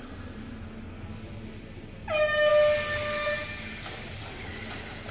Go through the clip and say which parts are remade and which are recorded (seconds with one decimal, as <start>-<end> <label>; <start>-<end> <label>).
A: 0.0-5.1 recorded